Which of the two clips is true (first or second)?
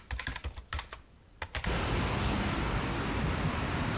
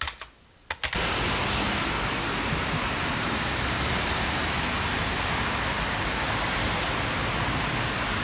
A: second